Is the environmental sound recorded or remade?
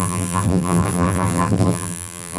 remade